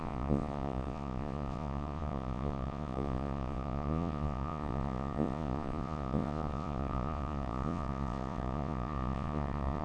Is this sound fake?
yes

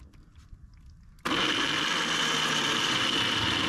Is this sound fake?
no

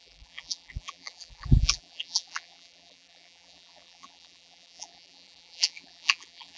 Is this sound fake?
yes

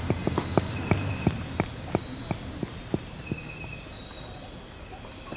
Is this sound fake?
no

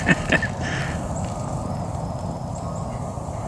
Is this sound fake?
no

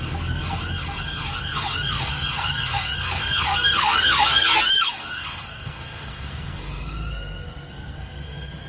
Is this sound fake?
yes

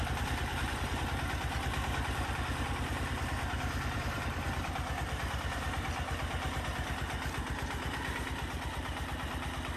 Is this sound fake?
yes